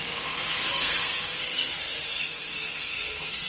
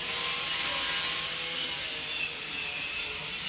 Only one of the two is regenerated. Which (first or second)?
first